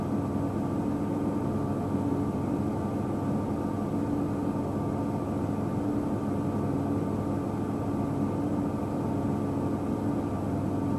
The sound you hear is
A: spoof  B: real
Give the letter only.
B